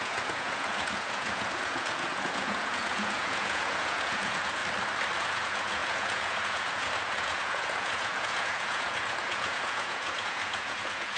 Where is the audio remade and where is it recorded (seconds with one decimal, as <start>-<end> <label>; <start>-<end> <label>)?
0.0-4.6 remade; 4.6-5.2 recorded; 5.2-11.2 remade